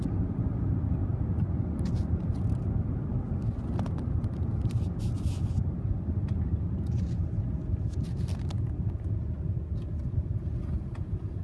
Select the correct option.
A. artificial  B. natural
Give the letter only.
B